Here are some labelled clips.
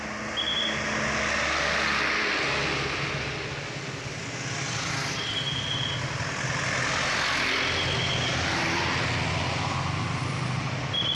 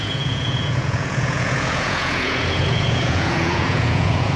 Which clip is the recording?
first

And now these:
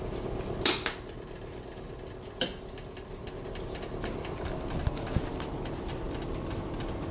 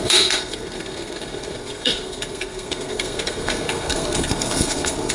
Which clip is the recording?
first